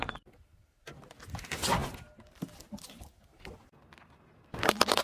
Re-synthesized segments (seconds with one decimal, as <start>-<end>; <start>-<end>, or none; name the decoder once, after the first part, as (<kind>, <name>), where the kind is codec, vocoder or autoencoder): none